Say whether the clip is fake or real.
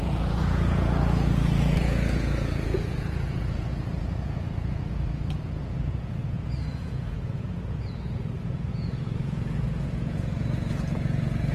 fake